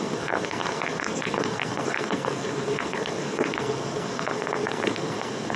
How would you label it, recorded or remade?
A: remade